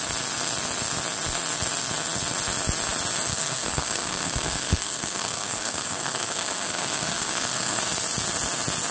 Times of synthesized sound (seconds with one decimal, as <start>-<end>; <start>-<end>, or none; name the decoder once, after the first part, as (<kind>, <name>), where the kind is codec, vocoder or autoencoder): 3.3-7.8 (codec, SNAC)